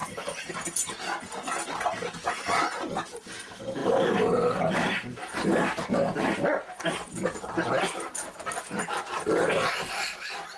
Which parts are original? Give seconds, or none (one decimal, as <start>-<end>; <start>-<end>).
0.0-10.6